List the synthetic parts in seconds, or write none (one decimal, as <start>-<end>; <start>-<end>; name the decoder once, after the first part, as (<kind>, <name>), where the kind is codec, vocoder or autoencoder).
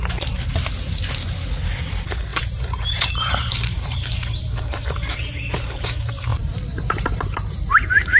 2.3-4.4 (vocoder, BigVGAN v2); 6.3-7.2